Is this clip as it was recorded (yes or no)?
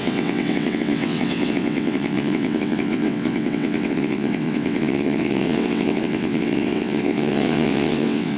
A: no